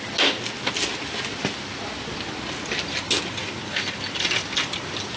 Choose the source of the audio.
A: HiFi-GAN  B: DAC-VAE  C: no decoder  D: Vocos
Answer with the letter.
C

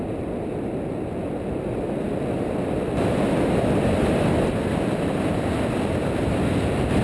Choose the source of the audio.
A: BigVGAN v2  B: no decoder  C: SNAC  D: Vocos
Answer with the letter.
B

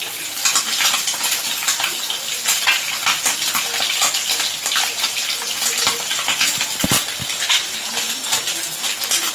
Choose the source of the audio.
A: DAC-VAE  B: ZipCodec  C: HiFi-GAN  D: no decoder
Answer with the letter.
D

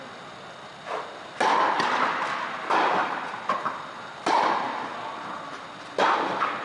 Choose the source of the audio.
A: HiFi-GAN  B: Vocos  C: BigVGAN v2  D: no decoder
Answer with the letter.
D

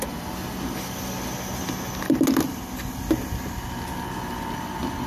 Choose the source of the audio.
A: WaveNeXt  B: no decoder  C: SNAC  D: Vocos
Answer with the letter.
B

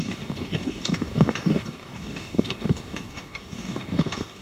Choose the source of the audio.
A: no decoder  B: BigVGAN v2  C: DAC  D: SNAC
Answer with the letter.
C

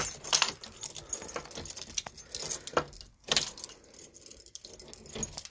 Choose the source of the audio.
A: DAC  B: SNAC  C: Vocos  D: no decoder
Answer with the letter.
D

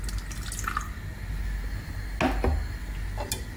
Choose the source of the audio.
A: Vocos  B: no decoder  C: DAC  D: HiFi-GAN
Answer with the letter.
B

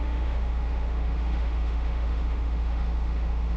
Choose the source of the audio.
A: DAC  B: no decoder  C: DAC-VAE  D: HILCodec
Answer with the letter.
C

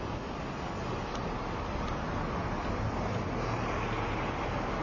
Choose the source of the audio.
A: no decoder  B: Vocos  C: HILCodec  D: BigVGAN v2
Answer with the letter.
A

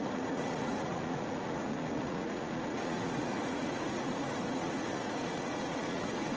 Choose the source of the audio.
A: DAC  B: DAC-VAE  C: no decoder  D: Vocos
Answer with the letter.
D